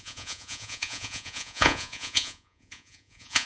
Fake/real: fake